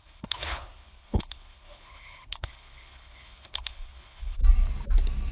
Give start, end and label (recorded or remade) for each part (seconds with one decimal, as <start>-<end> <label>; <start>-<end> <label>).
0.0-4.4 remade; 4.4-5.3 recorded